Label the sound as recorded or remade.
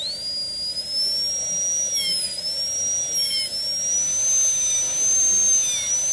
recorded